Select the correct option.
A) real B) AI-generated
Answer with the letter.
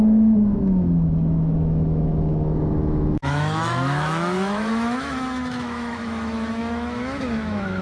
B